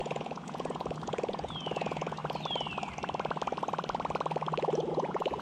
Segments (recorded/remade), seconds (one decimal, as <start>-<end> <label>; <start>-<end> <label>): 0.0-2.2 remade; 2.2-4.9 recorded; 4.9-5.4 remade